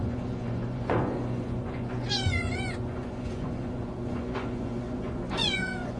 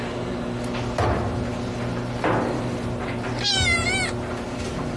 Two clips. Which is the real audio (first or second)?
second